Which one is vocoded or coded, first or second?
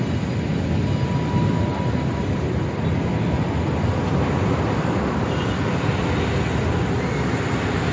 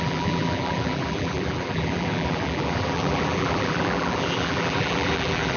second